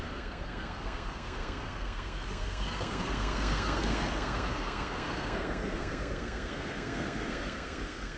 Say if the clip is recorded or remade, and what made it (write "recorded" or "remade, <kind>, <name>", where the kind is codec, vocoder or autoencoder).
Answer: remade, codec, SNAC